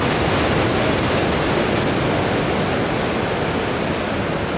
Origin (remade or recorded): recorded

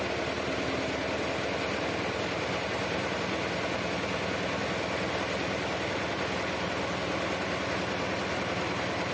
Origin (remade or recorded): recorded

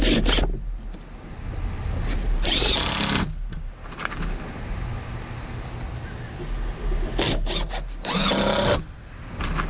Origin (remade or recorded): recorded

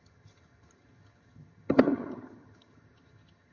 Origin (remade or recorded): remade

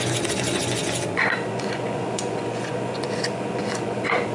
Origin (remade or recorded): remade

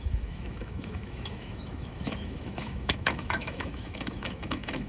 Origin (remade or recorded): remade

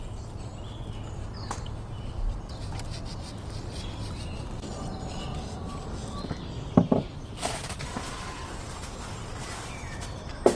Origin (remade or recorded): recorded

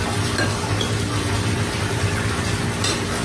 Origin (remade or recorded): recorded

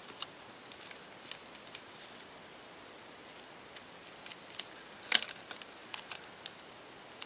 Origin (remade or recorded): recorded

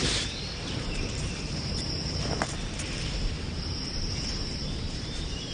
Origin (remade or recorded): remade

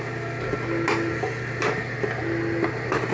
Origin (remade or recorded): recorded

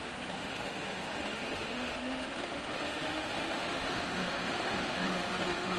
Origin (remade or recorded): remade